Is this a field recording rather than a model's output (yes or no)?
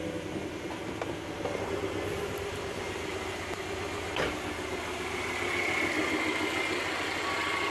yes